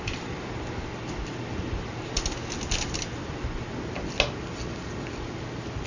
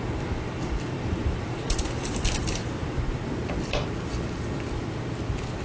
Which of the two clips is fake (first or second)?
second